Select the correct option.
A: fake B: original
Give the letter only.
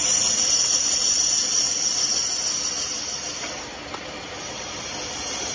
B